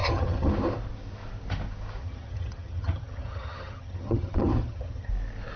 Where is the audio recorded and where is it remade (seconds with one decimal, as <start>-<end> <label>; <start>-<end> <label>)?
0.0-0.5 remade; 0.5-2.0 recorded; 2.0-5.1 remade; 5.1-5.6 recorded

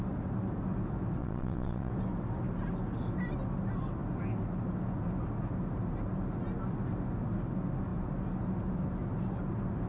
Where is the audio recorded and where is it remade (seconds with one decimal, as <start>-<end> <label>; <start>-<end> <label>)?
0.0-1.2 recorded; 1.2-1.9 remade; 1.9-9.9 recorded

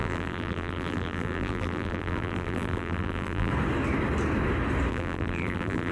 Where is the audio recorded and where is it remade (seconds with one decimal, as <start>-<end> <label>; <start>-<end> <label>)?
0.0-3.5 remade; 3.5-4.9 recorded; 4.9-5.9 remade

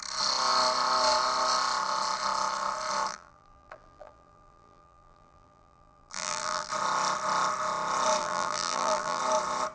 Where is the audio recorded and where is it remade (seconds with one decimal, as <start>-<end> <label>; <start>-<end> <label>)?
0.0-3.1 recorded; 3.1-6.7 remade; 6.7-8.2 recorded; 8.2-9.2 remade; 9.2-9.7 recorded

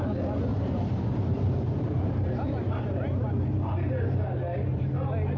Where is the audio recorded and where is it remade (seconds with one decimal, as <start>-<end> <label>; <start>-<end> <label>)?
0.0-0.5 recorded; 0.5-3.7 remade; 3.7-5.4 recorded